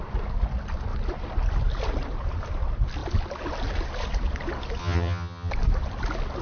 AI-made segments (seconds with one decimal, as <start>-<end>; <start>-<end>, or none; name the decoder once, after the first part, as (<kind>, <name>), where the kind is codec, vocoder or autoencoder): 4.8-5.5 (vocoder, HiFi-GAN)